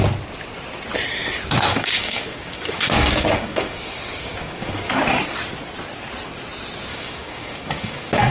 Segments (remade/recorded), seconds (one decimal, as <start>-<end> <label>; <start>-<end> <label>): 0.0-1.7 recorded; 1.7-5.0 remade; 5.0-6.9 recorded; 6.9-8.3 remade